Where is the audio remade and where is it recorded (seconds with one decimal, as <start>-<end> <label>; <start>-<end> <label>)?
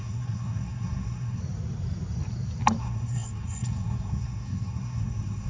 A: 0.0-1.4 remade; 1.4-2.8 recorded; 2.8-5.5 remade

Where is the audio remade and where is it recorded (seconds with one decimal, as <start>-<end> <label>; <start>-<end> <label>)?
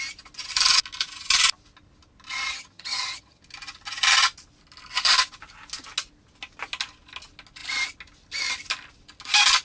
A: 0.0-2.5 recorded; 2.5-3.4 remade; 3.4-9.6 recorded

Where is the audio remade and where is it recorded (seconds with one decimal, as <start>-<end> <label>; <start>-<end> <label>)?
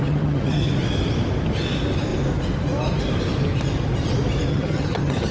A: 0.0-0.7 remade; 0.7-4.5 recorded; 4.5-5.3 remade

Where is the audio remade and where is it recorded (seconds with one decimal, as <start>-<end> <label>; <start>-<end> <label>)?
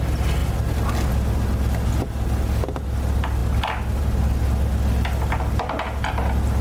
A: 0.0-6.6 recorded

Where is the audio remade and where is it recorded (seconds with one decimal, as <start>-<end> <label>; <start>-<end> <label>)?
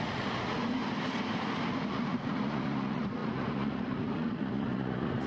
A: 0.0-0.8 remade; 0.8-1.7 recorded; 1.7-5.3 remade